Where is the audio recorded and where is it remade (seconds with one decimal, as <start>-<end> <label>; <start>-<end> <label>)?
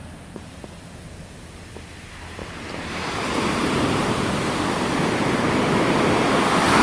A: 0.0-0.5 remade; 0.5-2.4 recorded; 2.4-4.1 remade; 4.1-6.8 recorded